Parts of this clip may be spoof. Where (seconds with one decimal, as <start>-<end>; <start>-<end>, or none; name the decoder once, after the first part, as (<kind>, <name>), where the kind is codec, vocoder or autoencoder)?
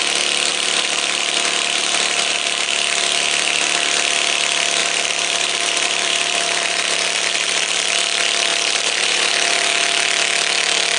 0.5-2.7 (vocoder, BigVGAN v2); 4.8-7.9; 8.5-9.3